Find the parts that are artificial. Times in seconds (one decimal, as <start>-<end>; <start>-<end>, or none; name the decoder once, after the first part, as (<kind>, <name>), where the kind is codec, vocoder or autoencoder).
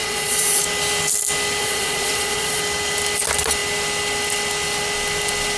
0.0-0.6 (vocoder, Vocos); 1.6-2.6